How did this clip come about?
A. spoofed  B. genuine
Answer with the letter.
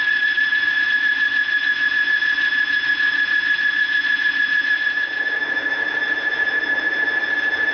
A